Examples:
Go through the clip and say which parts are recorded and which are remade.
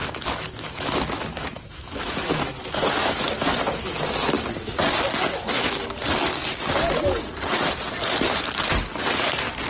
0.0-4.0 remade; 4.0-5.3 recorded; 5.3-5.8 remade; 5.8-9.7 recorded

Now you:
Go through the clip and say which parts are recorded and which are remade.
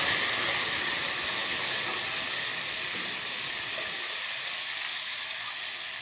0.0-4.9 recorded; 4.9-5.5 remade; 5.5-6.0 recorded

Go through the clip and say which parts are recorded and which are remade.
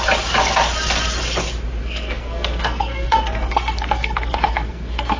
0.0-1.8 recorded; 1.8-5.2 remade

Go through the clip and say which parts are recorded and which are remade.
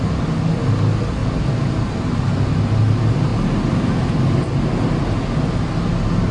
0.0-6.3 recorded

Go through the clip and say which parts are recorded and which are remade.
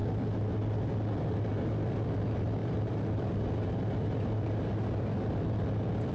0.0-1.5 recorded; 1.5-6.1 remade